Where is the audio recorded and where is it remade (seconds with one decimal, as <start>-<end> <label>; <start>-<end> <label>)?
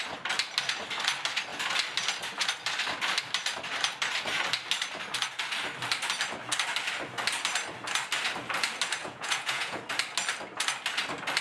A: 0.0-9.0 recorded; 9.0-9.8 remade; 9.8-11.4 recorded